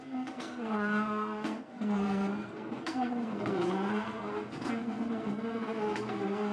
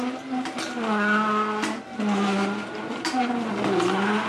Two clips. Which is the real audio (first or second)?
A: second